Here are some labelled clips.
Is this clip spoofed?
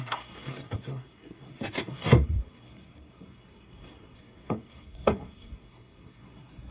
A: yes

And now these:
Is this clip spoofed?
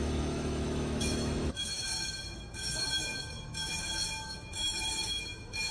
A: yes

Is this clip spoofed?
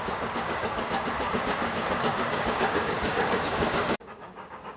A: yes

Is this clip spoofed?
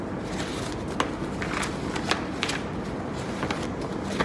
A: no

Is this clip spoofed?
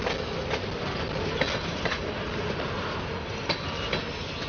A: no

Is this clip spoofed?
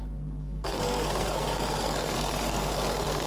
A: yes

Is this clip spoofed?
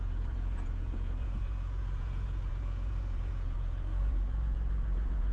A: yes